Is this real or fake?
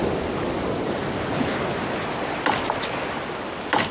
real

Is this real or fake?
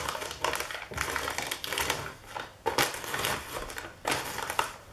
real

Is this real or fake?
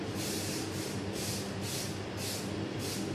real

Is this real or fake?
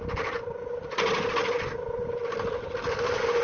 real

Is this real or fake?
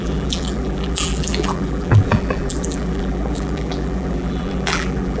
fake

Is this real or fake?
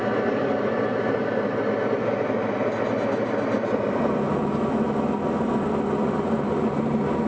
real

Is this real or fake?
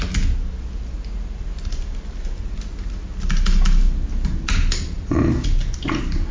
real